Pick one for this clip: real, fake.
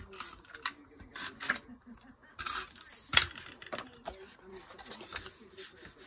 real